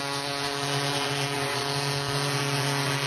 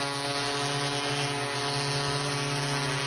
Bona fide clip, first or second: second